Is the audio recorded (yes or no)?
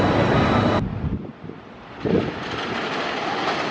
yes